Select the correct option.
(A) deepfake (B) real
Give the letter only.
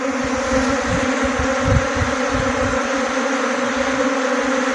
B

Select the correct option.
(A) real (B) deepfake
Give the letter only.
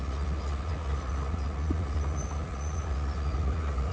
B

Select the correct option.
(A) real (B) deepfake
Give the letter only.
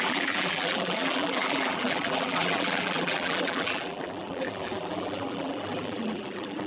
B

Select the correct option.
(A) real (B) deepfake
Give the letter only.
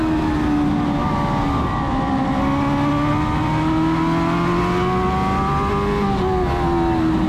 A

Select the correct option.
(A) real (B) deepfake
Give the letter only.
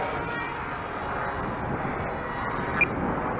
A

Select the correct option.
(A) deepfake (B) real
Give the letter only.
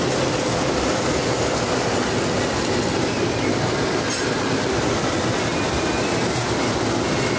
B